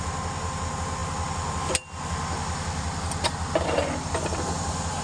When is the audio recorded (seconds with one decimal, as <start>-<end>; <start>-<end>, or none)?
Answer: 0.0-5.0